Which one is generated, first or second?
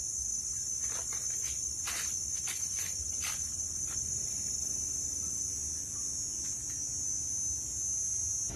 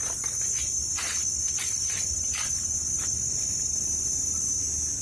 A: second